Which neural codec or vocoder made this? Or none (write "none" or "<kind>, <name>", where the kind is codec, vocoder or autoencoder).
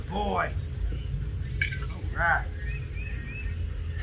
none